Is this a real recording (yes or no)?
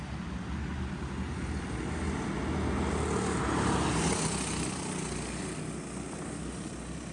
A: yes